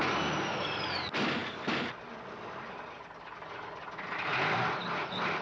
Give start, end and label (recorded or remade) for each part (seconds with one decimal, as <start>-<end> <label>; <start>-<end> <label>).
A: 0.0-5.4 recorded